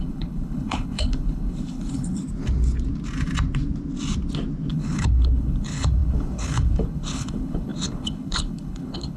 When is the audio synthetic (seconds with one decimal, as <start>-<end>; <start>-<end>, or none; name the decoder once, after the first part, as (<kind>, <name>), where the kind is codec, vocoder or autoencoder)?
0.0-2.2 (codec, HILCodec); 4.7-9.2